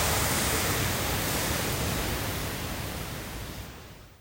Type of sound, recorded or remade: remade